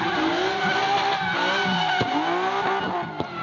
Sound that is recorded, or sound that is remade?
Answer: recorded